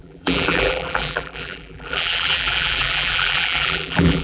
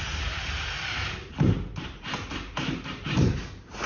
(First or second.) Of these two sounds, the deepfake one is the first